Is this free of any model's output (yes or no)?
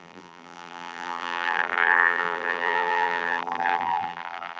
no